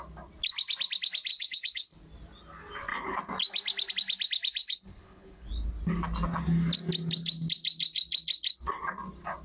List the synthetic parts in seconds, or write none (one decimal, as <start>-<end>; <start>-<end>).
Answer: 1.3-2.0; 4.6-5.5